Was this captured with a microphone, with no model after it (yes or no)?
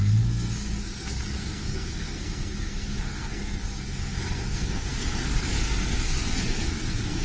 no